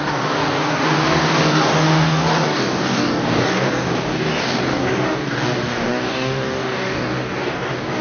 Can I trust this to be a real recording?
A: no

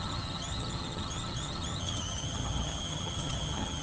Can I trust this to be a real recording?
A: no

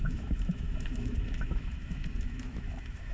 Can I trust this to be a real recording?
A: no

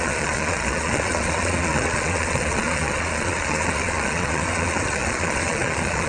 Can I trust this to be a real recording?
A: no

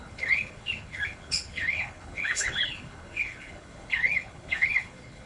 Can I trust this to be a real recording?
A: no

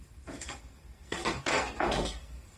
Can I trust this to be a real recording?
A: no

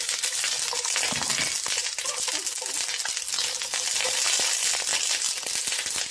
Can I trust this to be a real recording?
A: yes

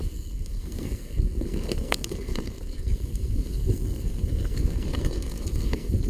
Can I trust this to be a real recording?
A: no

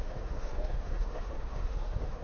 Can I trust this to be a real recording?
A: no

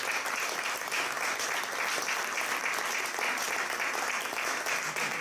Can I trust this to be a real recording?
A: yes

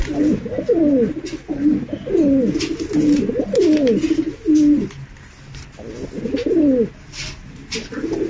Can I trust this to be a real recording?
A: yes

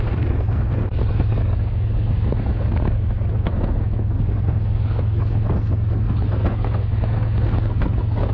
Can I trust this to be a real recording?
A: no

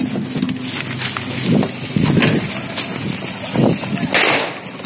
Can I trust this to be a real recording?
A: yes